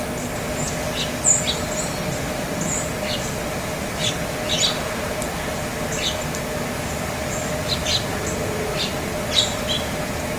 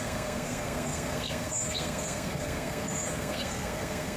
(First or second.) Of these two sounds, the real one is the first